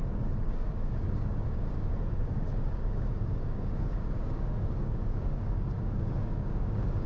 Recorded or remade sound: remade